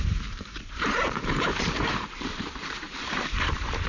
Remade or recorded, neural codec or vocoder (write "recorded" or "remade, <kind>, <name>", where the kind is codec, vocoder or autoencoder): remade, vocoder, BigVGAN v2